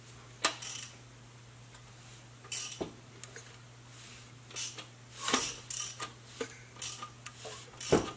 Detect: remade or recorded recorded